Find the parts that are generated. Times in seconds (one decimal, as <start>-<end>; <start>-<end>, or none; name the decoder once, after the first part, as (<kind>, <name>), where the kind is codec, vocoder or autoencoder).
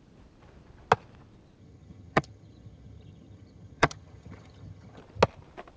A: 1.6-5.0 (vocoder, HiFi-GAN)